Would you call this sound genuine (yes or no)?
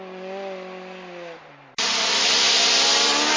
yes